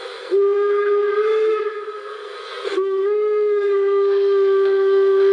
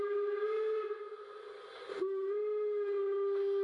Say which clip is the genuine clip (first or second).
second